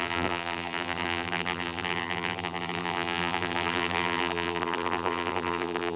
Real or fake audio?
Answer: fake